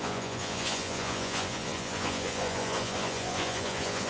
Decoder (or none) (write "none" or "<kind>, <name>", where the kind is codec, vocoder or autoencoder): vocoder, Vocos